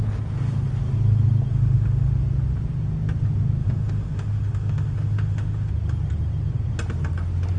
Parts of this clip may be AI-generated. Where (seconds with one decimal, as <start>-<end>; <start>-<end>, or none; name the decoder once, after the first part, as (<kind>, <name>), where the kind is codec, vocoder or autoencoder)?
1.5-2.1 (autoencoder, DAC-VAE); 3.6-5.7